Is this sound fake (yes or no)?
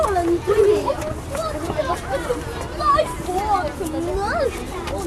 no